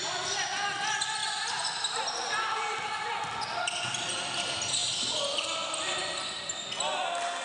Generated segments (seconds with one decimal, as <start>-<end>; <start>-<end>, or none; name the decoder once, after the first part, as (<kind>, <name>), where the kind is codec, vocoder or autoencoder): none